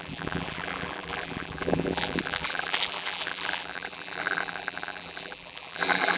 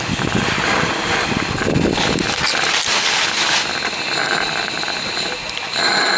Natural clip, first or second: second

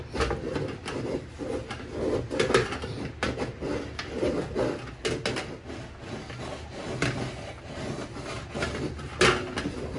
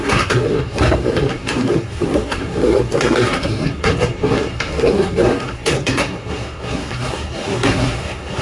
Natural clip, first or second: first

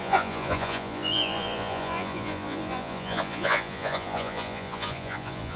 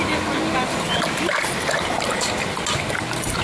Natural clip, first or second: second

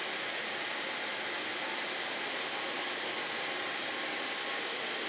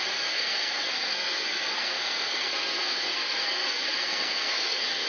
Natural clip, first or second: first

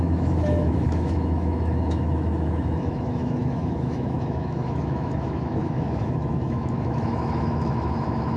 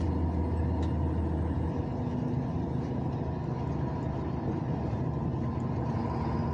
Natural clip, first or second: second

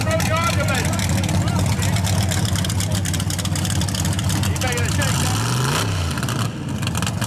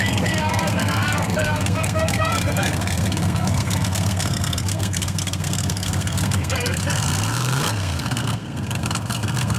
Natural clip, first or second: first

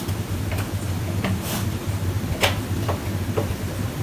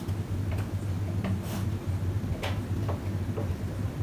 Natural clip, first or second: second